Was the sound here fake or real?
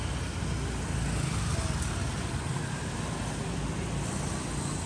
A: real